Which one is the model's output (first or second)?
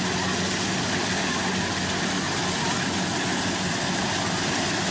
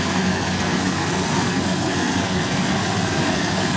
second